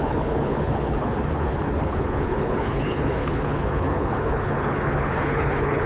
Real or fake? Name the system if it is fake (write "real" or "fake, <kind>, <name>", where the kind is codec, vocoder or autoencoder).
fake, codec, HILCodec